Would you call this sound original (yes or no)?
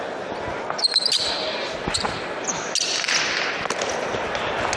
yes